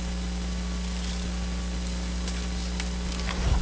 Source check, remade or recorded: recorded